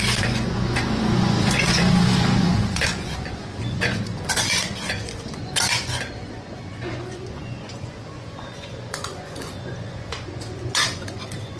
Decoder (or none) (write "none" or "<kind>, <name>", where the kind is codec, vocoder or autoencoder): vocoder, Vocos